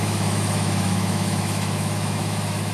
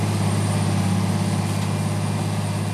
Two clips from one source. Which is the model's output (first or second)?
first